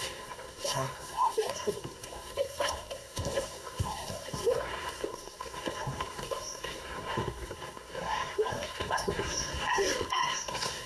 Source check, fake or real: fake